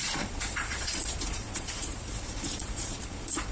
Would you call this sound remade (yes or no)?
yes